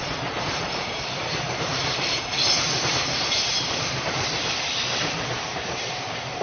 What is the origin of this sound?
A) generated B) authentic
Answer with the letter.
A